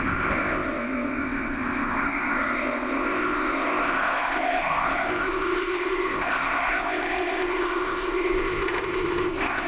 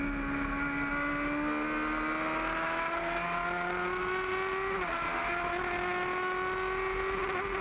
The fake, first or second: first